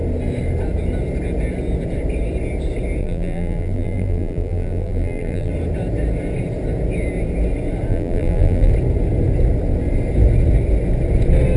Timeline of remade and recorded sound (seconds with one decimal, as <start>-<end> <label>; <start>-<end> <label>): 0.0-3.0 recorded; 3.0-5.5 remade; 5.5-7.9 recorded; 7.9-8.7 remade; 8.7-11.6 recorded